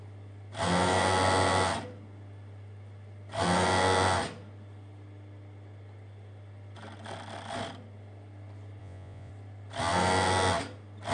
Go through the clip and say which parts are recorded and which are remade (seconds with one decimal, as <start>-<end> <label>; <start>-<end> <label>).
0.0-8.8 recorded; 8.8-9.3 remade; 9.3-11.1 recorded